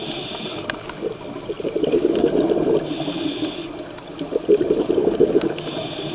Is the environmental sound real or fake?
real